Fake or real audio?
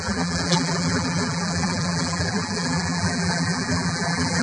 fake